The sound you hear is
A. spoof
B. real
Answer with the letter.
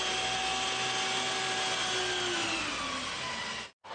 B